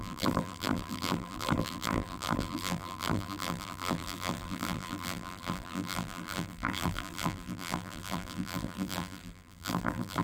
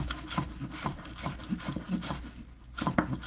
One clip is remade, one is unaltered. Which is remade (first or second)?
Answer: first